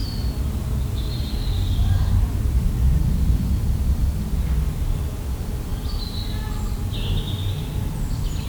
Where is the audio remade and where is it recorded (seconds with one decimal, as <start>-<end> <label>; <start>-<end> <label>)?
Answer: 0.0-8.5 recorded